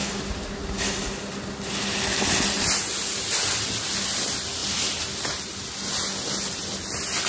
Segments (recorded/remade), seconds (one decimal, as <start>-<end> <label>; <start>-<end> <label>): 0.0-7.3 recorded